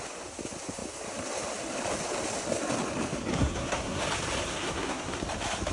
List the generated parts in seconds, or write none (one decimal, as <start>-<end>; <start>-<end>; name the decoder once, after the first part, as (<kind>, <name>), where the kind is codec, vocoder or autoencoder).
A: 3.3-4.0 (codec, SNAC); 4.5-5.2